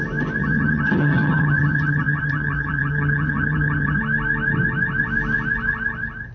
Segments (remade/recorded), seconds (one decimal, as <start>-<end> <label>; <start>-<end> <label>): 0.0-0.4 recorded; 0.4-4.0 remade; 4.0-6.3 recorded